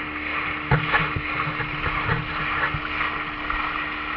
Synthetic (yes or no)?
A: no